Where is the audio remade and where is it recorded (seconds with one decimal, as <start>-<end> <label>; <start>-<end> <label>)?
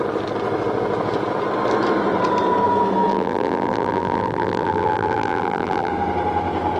0.0-3.1 recorded; 3.1-5.9 remade; 5.9-6.8 recorded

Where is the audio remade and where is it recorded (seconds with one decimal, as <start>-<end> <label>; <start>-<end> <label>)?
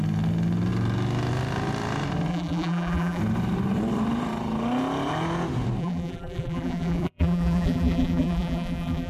0.0-2.3 recorded; 2.3-3.2 remade; 3.2-5.8 recorded; 5.8-9.1 remade